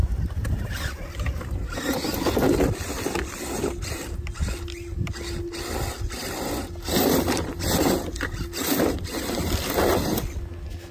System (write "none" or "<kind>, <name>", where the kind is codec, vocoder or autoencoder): none